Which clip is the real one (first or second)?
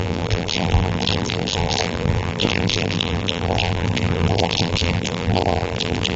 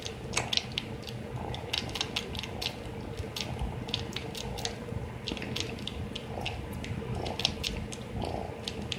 second